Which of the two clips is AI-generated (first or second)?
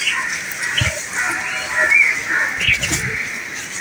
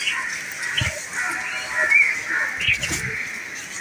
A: first